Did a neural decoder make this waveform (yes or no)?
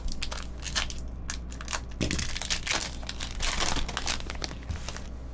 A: no